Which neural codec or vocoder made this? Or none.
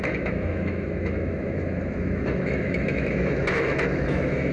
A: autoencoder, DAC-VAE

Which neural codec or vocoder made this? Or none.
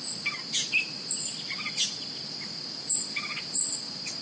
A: none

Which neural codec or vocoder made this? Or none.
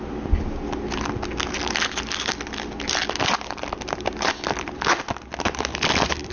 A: none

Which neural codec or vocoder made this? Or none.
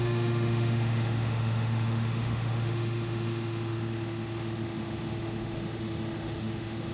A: autoencoder, DAC-VAE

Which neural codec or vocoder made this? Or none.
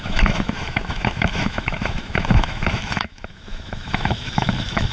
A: autoencoder, DAC-VAE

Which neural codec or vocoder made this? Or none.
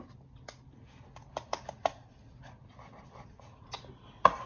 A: none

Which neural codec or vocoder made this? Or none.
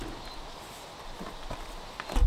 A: none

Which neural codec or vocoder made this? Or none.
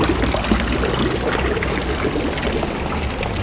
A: none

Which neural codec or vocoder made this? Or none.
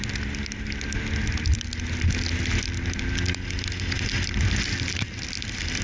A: none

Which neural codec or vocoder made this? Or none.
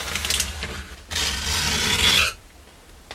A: none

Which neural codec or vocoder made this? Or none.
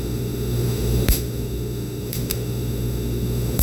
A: autoencoder, DAC-VAE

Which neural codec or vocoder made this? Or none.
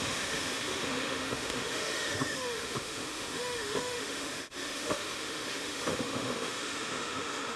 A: autoencoder, DAC-VAE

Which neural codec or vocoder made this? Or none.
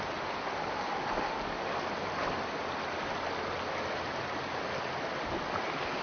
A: none